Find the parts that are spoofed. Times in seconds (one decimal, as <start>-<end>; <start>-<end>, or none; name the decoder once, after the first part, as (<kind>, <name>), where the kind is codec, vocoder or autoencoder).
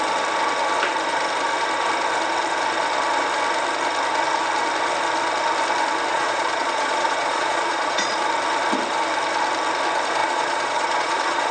6.1-8.1 (vocoder, Vocos); 10.2-11.5